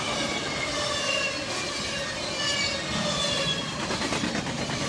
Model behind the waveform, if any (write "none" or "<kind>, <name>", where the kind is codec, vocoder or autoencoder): none